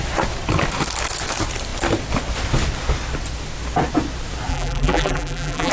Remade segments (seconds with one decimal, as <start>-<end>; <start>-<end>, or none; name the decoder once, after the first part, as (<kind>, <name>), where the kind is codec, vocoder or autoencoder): 4.5-5.7 (vocoder, BigVGAN v2)